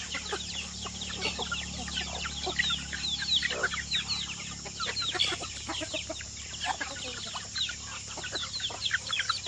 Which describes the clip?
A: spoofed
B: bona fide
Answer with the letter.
B